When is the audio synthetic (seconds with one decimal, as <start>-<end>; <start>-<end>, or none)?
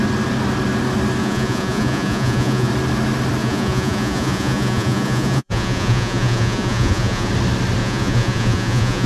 1.2-2.7; 3.4-7.3; 7.8-9.1